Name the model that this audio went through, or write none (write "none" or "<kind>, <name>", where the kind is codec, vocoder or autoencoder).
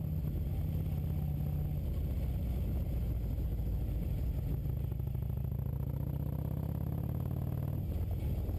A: none